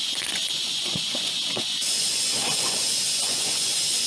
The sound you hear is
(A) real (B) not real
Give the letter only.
B